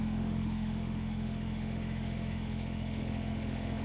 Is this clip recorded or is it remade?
remade